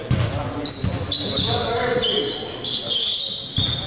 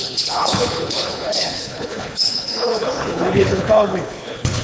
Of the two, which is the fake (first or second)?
second